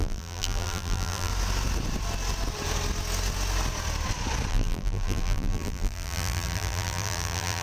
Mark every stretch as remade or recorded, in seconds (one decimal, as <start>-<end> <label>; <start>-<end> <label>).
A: 0.0-1.3 remade; 1.3-4.5 recorded; 4.5-7.6 remade